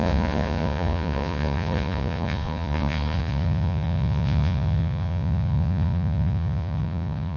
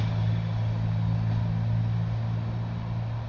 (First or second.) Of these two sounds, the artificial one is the first